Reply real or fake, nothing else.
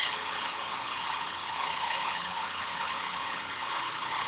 fake